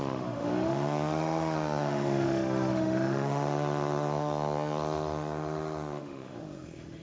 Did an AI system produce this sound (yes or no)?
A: yes